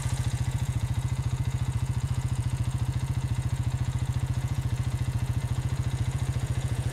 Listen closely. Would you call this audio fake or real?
fake